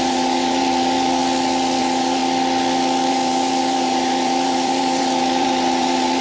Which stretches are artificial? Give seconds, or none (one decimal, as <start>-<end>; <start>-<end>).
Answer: 0.0-1.2; 1.8-2.2; 3.1-6.2